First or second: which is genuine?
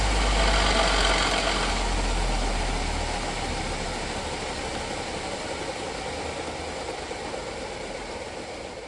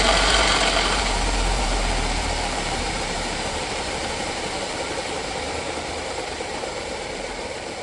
first